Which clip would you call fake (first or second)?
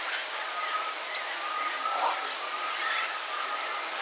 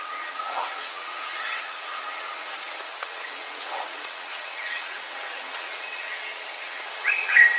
second